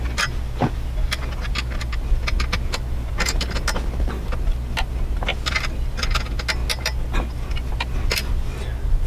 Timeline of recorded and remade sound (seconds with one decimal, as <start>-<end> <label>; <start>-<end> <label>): 0.0-9.1 recorded